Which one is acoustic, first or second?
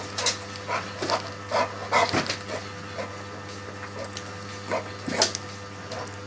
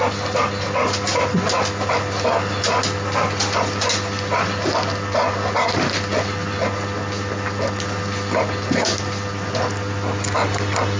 first